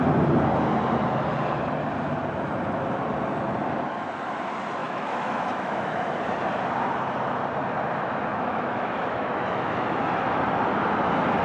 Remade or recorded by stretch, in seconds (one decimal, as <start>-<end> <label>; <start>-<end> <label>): 0.0-4.8 recorded; 4.8-6.2 remade; 6.2-8.3 recorded; 8.3-10.4 remade; 10.4-11.4 recorded

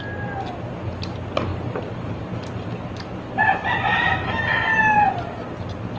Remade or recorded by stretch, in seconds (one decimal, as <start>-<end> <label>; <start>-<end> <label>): 0.0-6.0 recorded